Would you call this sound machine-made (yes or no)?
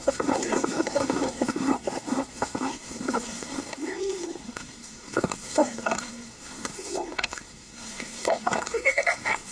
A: yes